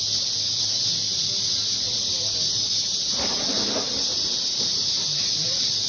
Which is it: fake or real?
real